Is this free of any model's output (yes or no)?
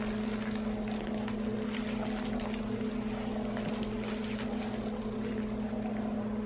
yes